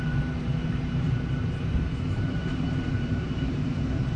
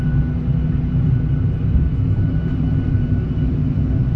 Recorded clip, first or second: second